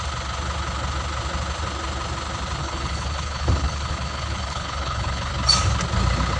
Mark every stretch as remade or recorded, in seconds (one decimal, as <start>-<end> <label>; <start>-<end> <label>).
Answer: 0.0-2.6 recorded; 2.6-5.3 remade; 5.3-6.4 recorded